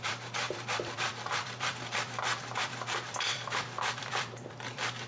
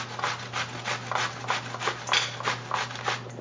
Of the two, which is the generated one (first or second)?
first